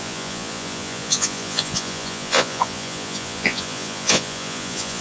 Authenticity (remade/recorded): remade